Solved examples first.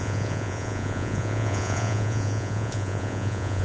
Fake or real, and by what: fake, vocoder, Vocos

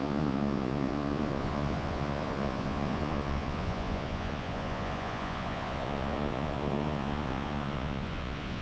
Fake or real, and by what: fake, vocoder, Vocos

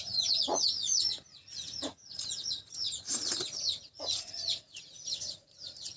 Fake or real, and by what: fake, vocoder, Vocos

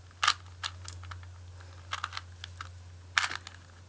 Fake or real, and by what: real